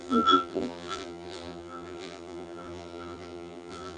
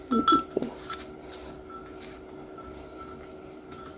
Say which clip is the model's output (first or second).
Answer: first